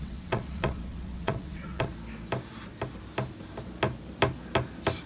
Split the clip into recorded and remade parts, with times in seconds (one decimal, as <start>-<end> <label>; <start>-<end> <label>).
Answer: 0.0-1.9 remade; 1.9-5.1 recorded